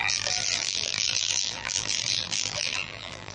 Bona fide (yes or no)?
no